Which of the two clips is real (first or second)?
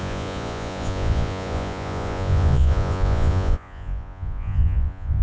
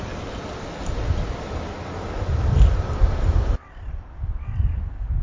second